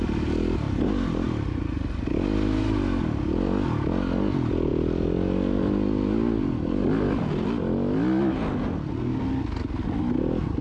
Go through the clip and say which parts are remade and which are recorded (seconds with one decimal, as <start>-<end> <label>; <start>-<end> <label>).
0.0-10.6 recorded